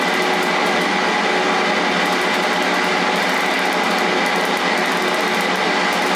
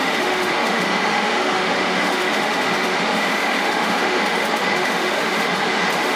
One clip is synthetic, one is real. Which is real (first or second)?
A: first